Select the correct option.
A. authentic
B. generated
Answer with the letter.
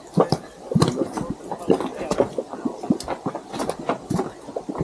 A